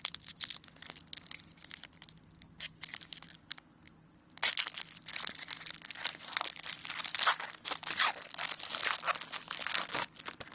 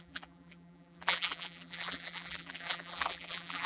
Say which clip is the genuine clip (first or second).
first